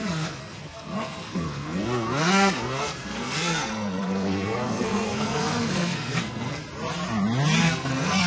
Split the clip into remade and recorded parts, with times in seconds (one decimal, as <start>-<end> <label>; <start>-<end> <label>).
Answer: 0.0-6.6 remade; 6.6-7.6 recorded; 7.6-8.3 remade

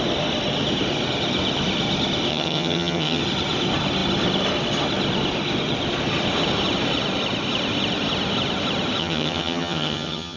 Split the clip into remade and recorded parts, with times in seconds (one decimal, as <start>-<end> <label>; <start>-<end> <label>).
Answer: 0.0-2.3 recorded; 2.3-3.2 remade; 3.2-9.0 recorded; 9.0-10.4 remade